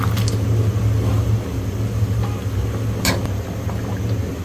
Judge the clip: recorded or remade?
recorded